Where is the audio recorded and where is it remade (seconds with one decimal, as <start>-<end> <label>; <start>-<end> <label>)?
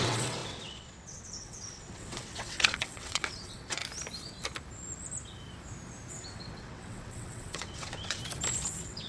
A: 0.0-3.8 remade; 3.8-6.1 recorded; 6.1-8.2 remade; 8.2-8.7 recorded; 8.7-9.1 remade